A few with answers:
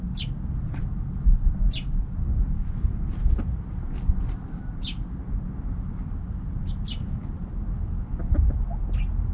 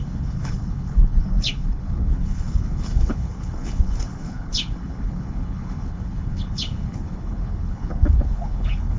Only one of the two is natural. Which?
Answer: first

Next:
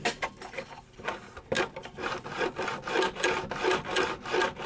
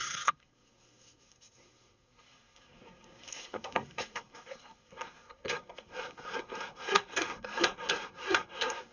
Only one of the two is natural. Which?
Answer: first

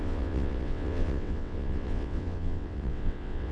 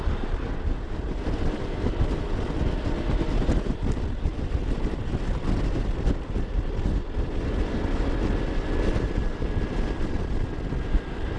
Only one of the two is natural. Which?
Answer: second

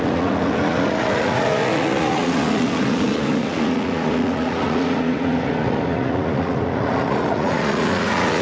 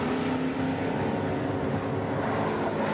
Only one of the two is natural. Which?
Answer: second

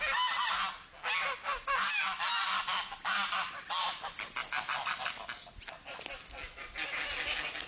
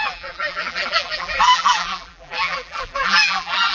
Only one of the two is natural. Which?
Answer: first